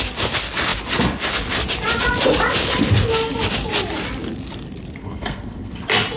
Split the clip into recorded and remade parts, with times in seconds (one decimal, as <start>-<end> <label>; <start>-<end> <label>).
0.0-5.0 recorded; 5.0-5.7 remade; 5.7-6.2 recorded